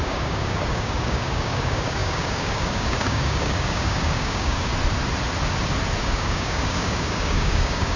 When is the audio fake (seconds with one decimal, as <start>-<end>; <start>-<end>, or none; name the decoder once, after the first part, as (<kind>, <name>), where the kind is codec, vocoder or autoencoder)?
0.0-4.7 (codec, DAC); 6.0-8.0